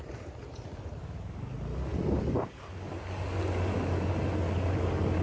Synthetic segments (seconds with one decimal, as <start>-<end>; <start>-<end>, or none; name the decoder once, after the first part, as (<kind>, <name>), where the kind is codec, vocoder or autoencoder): 1.0-1.5 (autoencoder, DAC-VAE)